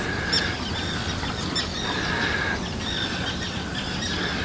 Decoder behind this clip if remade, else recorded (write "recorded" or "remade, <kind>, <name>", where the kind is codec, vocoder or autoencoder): recorded